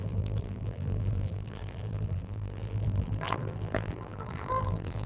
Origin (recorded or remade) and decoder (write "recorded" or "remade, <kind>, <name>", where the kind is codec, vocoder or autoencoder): remade, vocoder, BigVGAN v2